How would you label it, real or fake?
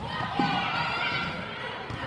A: real